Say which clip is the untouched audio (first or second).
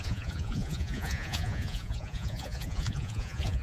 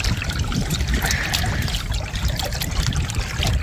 second